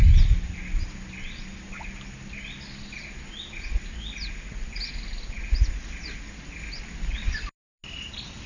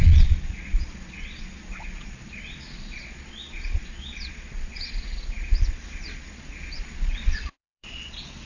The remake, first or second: second